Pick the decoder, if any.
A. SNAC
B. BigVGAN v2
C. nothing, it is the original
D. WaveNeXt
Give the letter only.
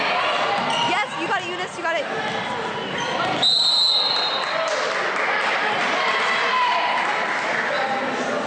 C